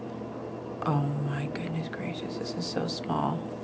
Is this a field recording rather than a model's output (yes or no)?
yes